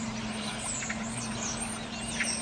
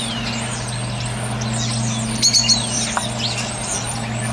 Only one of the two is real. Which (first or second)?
second